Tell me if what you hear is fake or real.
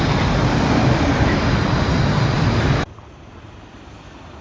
real